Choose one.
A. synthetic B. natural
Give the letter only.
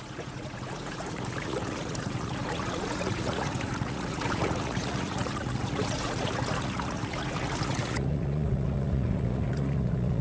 A